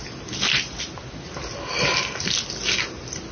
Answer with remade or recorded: recorded